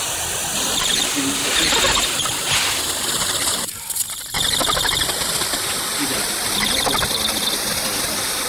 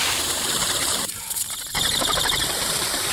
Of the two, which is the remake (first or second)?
second